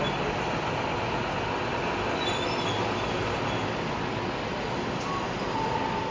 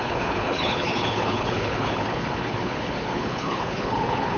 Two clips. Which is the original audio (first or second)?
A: first